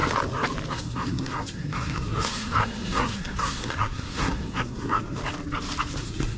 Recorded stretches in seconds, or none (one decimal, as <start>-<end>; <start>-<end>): 0.0-0.7; 5.2-6.0